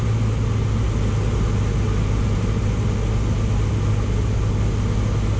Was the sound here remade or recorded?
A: recorded